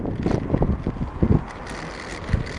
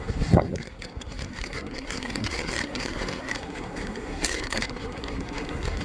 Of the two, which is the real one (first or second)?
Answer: first